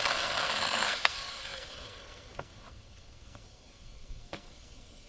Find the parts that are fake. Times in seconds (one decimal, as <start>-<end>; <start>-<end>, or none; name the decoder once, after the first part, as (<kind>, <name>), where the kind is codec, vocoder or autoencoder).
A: 0.0-5.1 (codec, SNAC)